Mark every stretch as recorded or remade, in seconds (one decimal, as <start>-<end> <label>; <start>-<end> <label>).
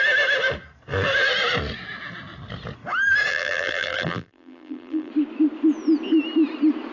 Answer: 0.0-3.3 recorded; 3.3-5.1 remade; 5.1-6.9 recorded